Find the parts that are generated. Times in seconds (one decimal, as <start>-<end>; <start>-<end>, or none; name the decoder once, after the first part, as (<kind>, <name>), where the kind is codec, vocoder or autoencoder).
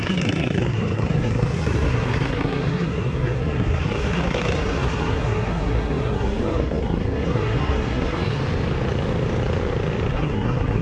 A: 0.0-8.4 (codec, SNAC); 10.1-10.8